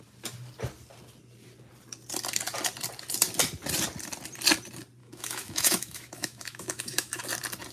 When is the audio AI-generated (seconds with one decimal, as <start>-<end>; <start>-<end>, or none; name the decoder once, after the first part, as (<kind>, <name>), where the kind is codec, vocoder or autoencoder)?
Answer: 5.0-7.2 (autoencoder, DAC-VAE)